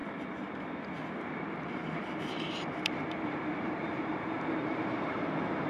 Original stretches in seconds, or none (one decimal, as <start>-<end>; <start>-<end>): 0.0-1.1